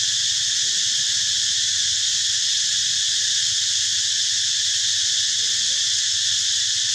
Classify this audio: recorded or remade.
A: recorded